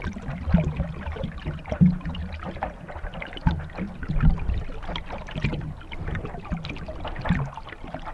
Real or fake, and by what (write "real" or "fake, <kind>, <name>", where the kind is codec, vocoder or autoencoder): real